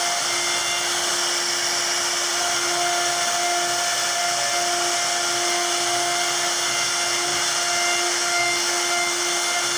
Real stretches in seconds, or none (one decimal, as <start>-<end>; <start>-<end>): 0.0-9.8